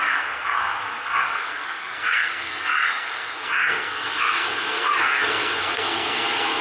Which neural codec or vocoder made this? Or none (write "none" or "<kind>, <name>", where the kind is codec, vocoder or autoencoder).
codec, SNAC